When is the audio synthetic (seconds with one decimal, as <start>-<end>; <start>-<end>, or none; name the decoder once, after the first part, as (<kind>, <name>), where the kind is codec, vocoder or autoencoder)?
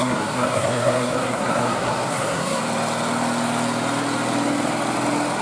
0.0-2.6 (codec, SNAC)